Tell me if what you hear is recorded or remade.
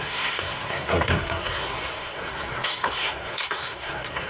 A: remade